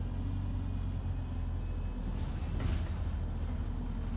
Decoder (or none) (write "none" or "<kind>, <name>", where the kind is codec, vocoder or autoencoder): none